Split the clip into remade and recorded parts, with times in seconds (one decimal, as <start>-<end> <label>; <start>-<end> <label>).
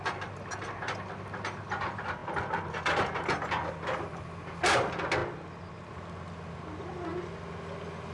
0.0-8.1 recorded